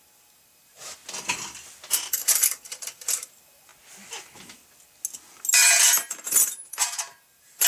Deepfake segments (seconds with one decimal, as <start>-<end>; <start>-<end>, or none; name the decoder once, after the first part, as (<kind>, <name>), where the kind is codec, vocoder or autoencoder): 0.0-1.0 (vocoder, BigVGAN v2); 1.9-3.7; 5.8-7.7